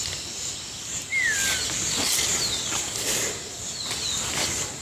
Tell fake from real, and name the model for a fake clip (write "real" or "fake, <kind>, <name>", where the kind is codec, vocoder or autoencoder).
real